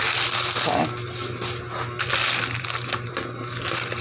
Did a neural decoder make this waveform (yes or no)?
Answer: no